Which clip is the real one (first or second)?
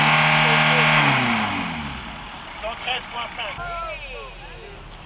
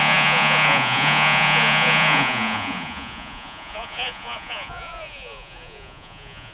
first